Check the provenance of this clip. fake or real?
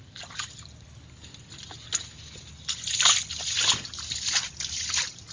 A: real